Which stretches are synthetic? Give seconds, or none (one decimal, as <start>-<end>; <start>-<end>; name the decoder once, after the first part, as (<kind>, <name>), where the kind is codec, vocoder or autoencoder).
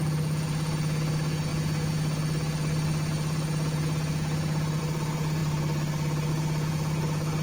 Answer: 0.0-5.4 (vocoder, Vocos); 6.3-7.4